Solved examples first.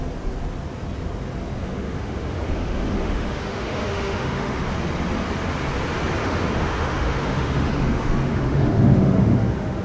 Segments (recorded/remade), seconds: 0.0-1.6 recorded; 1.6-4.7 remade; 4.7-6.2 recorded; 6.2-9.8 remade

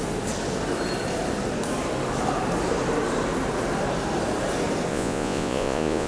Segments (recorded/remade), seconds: 0.0-4.9 recorded; 4.9-6.1 remade

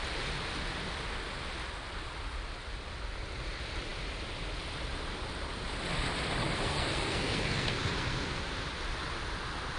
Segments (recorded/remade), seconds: 0.0-6.4 recorded; 6.4-8.5 remade; 8.5-9.8 recorded

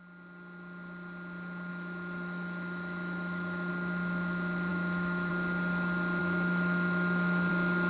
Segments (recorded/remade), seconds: 0.0-1.7 recorded; 1.7-3.7 remade; 3.7-4.7 recorded; 4.7-5.3 remade; 5.3-6.2 recorded; 6.2-7.5 remade; 7.5-7.9 recorded

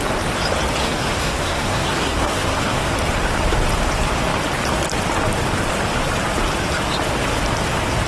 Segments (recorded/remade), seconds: 0.0-0.8 recorded; 0.8-2.9 remade; 2.9-8.1 recorded

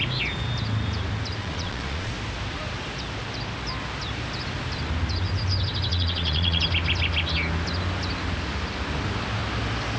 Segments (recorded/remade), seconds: 0.0-1.4 recorded; 1.4-2.1 remade; 2.1-5.9 recorded; 5.9-6.6 remade; 6.6-10.0 recorded

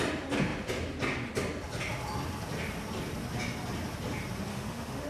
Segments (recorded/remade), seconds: 0.0-4.5 recorded; 4.5-5.1 remade

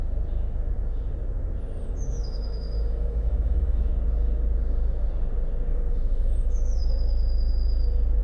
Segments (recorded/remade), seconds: 0.0-2.1 recorded; 2.1-3.9 remade; 3.9-5.7 recorded; 5.7-6.8 remade; 6.8-8.2 recorded